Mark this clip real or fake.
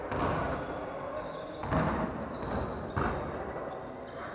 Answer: real